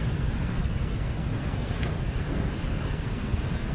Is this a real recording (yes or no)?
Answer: no